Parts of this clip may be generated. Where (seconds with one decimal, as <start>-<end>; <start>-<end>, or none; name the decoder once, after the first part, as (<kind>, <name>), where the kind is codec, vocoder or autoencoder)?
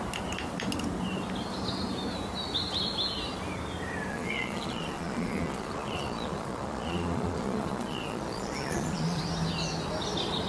4.1-9.2 (vocoder, Vocos)